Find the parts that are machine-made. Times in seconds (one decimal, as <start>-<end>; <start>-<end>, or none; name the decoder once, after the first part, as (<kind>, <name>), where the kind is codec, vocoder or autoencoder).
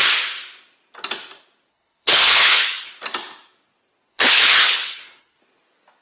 1.7-2.9 (codec, HILCodec); 4.1-5.4